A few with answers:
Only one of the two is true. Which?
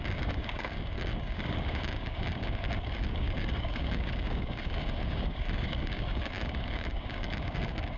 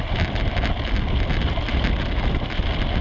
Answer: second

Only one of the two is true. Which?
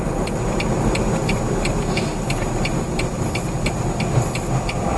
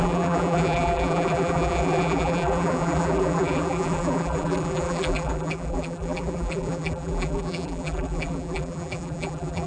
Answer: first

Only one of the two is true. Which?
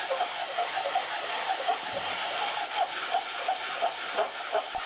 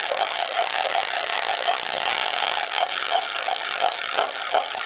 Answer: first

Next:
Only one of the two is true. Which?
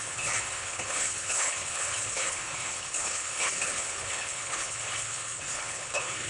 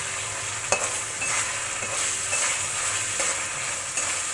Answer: second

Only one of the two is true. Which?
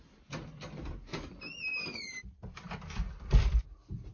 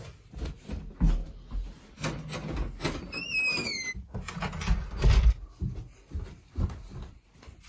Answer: second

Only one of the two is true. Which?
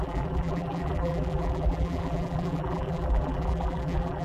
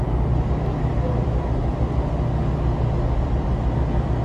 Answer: second